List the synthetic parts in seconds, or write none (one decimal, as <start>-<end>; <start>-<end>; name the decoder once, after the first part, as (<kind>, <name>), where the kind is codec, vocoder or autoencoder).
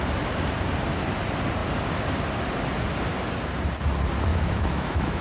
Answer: 4.3-5.2 (autoencoder, DAC-VAE)